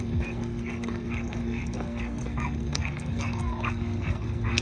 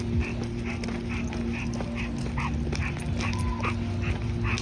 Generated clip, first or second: first